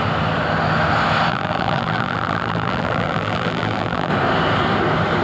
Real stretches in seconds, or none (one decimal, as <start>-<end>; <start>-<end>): 0.0-1.3; 4.1-5.2